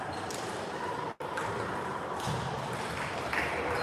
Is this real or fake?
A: fake